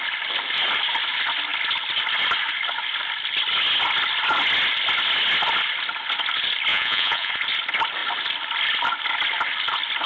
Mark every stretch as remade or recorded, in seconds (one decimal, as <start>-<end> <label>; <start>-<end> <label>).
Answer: 0.0-6.7 recorded; 6.7-7.3 remade; 7.3-10.1 recorded